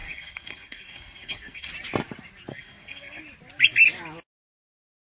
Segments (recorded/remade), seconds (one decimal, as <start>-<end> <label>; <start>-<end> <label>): 0.0-1.7 remade; 1.7-2.5 recorded; 2.5-3.2 remade; 3.2-5.2 recorded